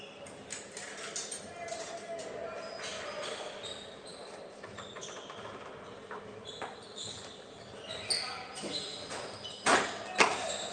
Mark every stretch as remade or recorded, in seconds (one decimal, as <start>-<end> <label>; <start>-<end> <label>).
0.0-2.2 recorded; 2.2-2.8 remade; 2.8-4.1 recorded; 4.1-5.4 remade; 5.4-8.9 recorded; 8.9-9.8 remade; 9.8-10.7 recorded